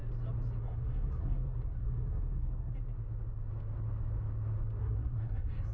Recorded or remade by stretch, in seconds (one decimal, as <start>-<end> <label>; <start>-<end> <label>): 0.0-0.6 recorded; 0.6-2.7 remade; 2.7-4.8 recorded; 4.8-5.7 remade

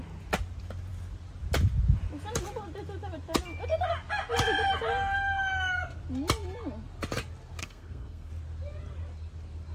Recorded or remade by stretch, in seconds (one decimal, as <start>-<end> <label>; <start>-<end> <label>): 0.0-7.6 recorded; 7.6-8.3 remade; 8.3-9.7 recorded

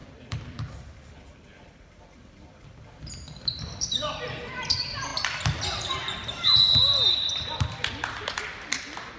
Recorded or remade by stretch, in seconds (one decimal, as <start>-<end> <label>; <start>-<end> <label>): 0.0-5.1 remade; 5.1-7.1 recorded; 7.1-9.2 remade

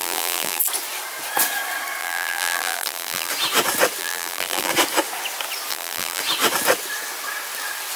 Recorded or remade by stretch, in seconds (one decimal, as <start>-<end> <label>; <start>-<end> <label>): 0.0-0.6 remade; 0.6-2.0 recorded; 2.0-3.3 remade; 3.3-4.0 recorded; 4.0-4.7 remade; 4.7-5.7 recorded; 5.7-6.2 remade; 6.2-8.0 recorded

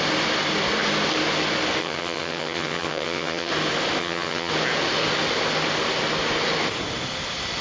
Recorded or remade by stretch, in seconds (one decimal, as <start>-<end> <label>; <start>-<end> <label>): 0.0-1.8 recorded; 1.8-3.5 remade; 3.5-4.0 recorded; 4.0-4.5 remade; 4.5-7.6 recorded

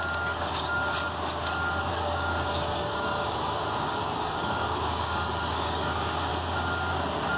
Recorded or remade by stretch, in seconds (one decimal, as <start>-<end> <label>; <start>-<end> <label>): 0.0-0.8 remade; 0.8-1.9 recorded; 1.9-6.3 remade; 6.3-7.4 recorded

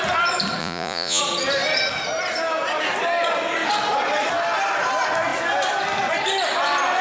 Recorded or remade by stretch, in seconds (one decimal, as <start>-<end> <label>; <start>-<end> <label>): 0.0-0.6 recorded; 0.6-1.2 remade; 1.2-7.0 recorded